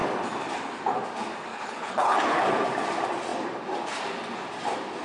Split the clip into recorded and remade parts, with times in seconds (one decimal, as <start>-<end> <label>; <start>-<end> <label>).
0.0-1.5 recorded; 1.5-2.4 remade; 2.4-5.0 recorded